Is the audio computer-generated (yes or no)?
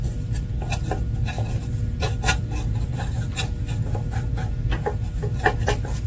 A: no